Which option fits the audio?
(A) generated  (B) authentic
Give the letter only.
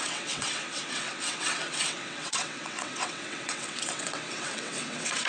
A